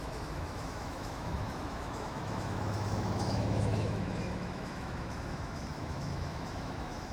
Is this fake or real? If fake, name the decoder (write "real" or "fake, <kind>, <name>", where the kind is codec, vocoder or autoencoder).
fake, autoencoder, DAC-VAE